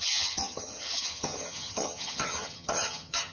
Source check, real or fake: fake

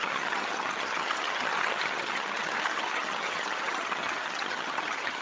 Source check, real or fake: fake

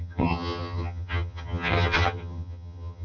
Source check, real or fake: fake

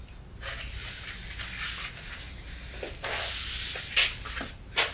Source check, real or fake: real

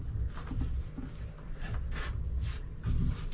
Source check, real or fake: real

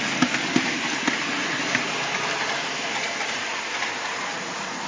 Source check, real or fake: real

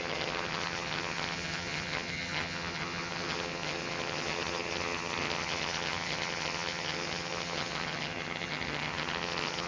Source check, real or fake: fake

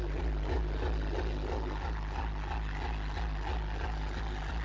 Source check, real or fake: real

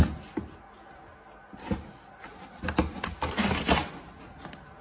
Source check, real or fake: real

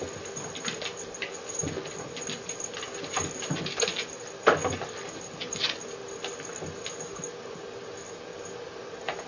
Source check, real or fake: real